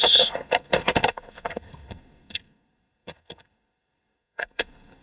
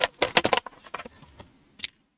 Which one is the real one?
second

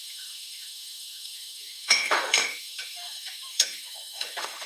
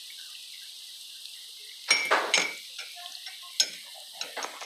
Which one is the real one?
second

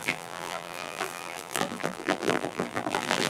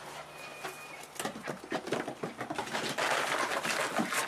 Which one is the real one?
second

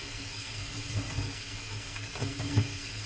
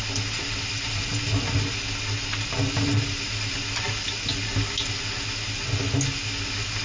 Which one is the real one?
second